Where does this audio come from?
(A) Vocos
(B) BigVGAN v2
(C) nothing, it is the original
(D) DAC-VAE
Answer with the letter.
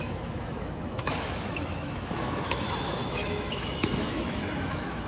D